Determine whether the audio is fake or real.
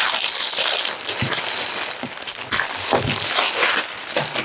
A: real